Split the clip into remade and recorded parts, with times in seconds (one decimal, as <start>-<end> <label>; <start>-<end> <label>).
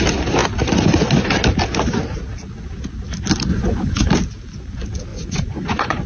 0.0-3.5 recorded; 3.5-4.1 remade; 4.1-5.1 recorded; 5.1-6.1 remade